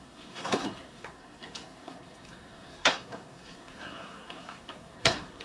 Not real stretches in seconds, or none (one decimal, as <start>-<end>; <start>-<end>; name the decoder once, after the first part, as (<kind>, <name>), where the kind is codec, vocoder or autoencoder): 0.0-5.4 (codec, SNAC)